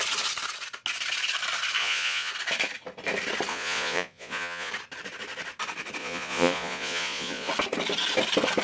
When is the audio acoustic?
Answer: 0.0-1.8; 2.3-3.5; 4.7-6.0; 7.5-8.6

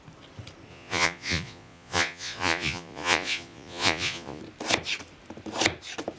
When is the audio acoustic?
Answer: 0.0-0.7; 4.4-6.2

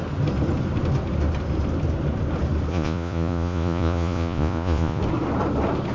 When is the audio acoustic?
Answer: 0.0-2.7; 5.0-5.9

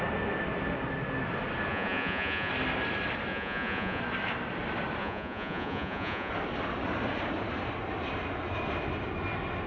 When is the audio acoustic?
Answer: 0.0-1.7; 2.5-3.3; 4.0-5.0; 6.3-9.7